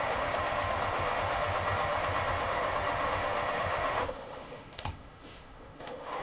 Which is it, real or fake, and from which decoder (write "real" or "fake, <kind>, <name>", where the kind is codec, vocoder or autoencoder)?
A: fake, autoencoder, DAC-VAE